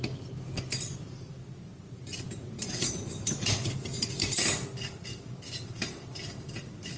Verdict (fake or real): real